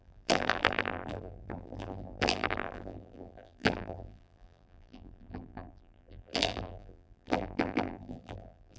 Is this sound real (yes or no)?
no